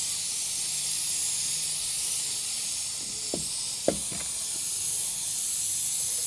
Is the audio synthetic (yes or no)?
no